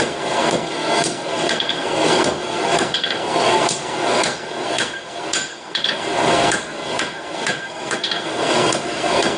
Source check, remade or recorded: remade